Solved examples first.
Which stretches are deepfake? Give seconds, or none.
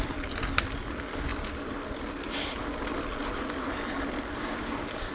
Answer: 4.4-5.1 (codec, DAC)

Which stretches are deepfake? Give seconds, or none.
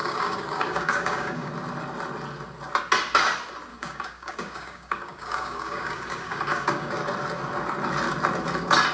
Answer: 0.0-1.5 (codec, DAC); 3.7-6.9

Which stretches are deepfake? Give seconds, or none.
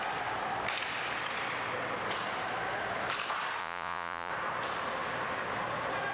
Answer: 3.6-4.3 (vocoder, Vocos)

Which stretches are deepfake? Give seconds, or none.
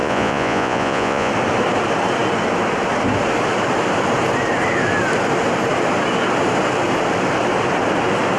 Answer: 0.0-1.3 (vocoder, Vocos)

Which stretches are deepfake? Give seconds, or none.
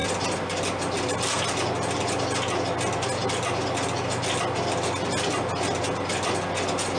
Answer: none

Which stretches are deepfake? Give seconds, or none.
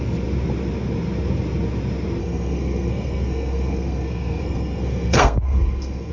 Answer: 2.2-6.1 (codec, SNAC)